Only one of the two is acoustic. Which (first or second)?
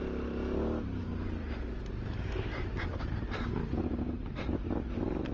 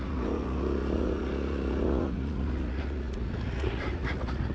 first